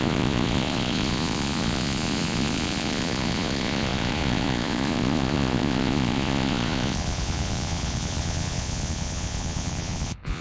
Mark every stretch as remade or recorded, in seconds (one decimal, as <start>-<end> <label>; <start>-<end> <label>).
0.0-10.4 remade